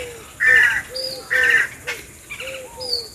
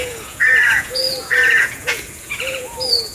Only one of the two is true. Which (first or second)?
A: first